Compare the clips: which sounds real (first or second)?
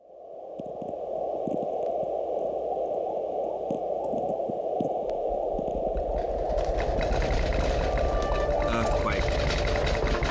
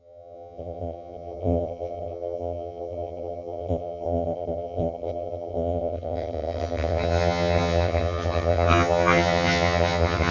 first